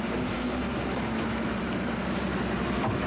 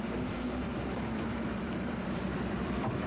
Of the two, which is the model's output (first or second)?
second